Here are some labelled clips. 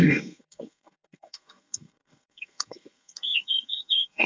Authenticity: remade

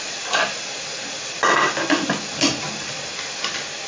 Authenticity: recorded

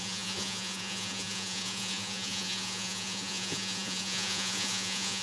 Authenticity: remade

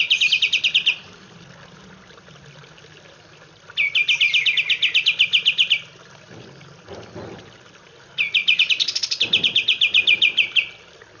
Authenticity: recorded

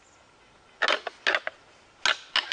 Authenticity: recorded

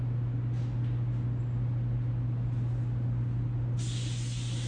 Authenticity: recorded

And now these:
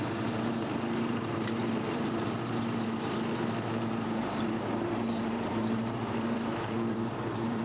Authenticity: remade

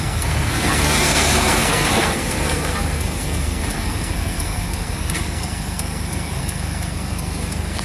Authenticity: remade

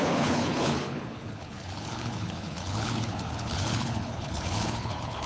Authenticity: remade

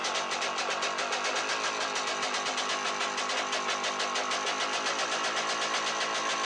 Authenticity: recorded